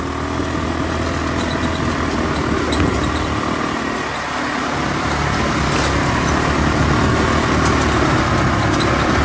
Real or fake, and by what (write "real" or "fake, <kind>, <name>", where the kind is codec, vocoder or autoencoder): real